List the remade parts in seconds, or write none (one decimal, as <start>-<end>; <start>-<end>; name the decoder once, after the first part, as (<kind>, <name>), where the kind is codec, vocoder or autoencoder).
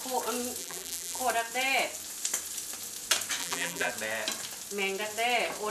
0.6-1.2 (vocoder, BigVGAN v2); 3.4-3.9